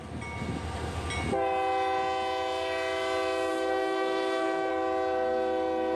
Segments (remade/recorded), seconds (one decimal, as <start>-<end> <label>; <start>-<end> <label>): 0.0-3.5 recorded; 3.5-4.7 remade; 4.7-6.0 recorded

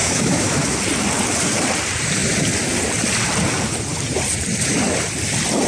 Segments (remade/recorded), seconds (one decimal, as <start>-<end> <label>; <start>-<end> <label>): 0.0-0.8 remade; 0.8-5.7 recorded

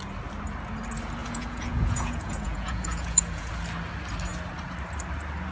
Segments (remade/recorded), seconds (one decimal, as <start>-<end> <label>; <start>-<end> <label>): 0.0-1.2 recorded; 1.2-3.5 remade; 3.5-5.5 recorded

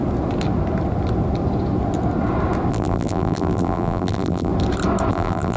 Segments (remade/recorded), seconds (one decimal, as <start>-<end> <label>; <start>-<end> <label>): 0.0-2.7 recorded; 2.7-4.5 remade; 4.5-5.1 recorded; 5.1-5.6 remade

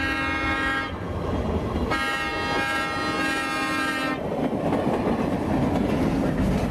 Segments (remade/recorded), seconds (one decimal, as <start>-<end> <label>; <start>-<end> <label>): 0.0-6.7 recorded

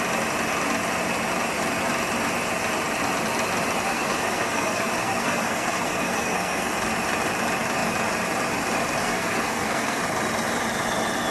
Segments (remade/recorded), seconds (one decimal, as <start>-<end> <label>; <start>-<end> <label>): 0.0-3.9 recorded; 3.9-6.7 remade; 6.7-9.0 recorded; 9.0-10.0 remade; 10.0-11.3 recorded

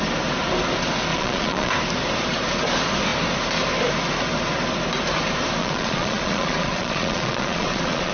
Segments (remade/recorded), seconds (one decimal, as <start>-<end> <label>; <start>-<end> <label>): 0.0-1.1 recorded; 1.1-1.7 remade; 1.7-5.6 recorded; 5.6-8.1 remade